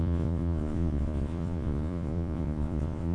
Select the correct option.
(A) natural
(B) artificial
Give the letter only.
B